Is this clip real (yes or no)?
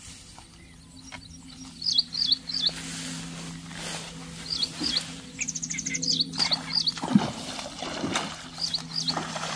yes